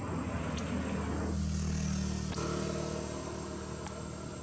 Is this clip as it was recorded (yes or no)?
yes